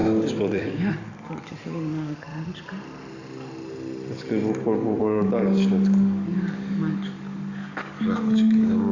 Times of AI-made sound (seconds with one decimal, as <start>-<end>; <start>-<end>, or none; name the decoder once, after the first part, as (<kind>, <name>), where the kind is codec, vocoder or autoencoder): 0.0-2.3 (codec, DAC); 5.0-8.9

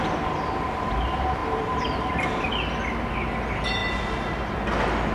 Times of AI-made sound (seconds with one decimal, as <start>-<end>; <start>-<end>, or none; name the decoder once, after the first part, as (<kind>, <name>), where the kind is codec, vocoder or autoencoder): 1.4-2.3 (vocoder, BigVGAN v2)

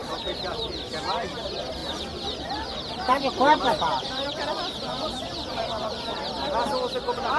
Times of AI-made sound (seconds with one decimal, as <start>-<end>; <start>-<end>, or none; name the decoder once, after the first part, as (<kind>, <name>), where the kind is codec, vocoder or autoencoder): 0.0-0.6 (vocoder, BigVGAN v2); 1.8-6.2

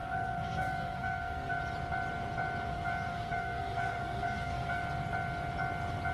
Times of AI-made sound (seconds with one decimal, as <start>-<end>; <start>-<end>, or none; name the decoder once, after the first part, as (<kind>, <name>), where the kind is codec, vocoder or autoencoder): 0.0-1.6 (codec, SNAC); 2.7-4.8

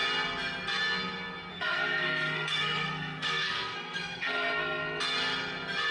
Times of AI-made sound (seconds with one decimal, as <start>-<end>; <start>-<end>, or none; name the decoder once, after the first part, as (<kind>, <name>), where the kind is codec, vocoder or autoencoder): 1.5-5.0 (codec, SNAC)